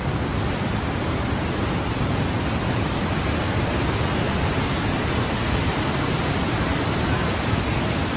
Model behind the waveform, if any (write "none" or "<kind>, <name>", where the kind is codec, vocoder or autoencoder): none